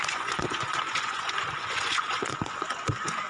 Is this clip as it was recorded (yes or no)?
no